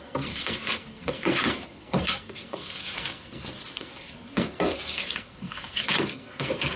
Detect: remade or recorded remade